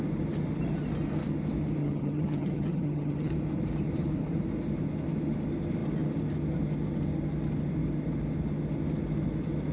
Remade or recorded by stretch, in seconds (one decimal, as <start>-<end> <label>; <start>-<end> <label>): 0.0-1.8 recorded; 1.8-3.3 remade; 3.3-9.7 recorded